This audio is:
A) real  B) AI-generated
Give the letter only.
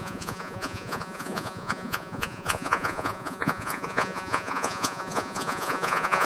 B